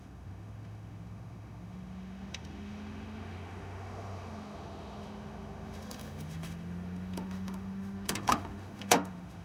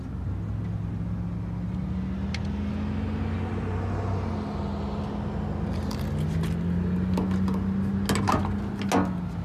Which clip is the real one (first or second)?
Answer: second